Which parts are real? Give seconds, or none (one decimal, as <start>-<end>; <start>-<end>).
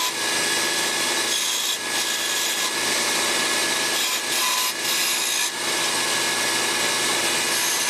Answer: 0.0-7.9